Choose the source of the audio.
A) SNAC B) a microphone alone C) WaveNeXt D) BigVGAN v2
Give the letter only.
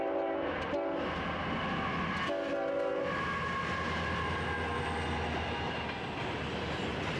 B